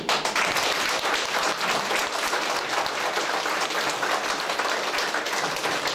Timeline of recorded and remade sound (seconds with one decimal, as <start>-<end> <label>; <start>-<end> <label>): 0.0-5.9 remade